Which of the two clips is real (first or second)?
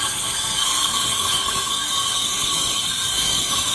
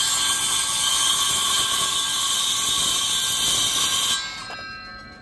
second